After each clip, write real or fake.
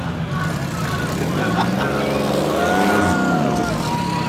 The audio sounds real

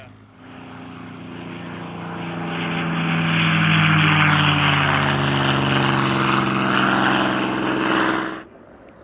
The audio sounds real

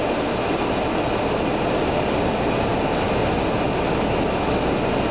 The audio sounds real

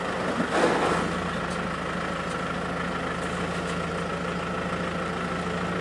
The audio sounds real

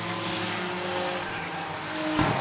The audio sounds real